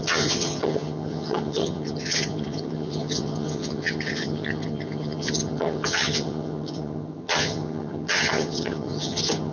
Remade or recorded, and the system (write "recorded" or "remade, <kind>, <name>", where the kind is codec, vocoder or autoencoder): remade, vocoder, HiFi-GAN